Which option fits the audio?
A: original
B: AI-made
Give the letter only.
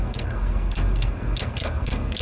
B